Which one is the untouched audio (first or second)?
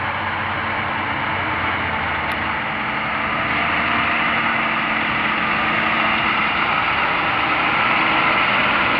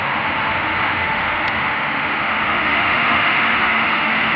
first